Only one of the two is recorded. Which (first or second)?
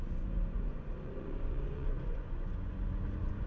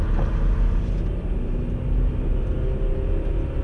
second